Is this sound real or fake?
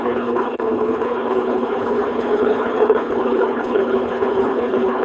fake